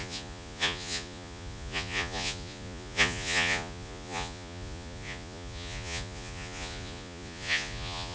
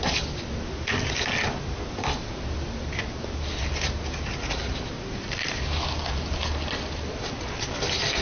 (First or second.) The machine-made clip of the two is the first